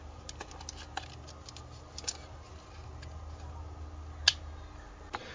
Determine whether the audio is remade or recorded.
recorded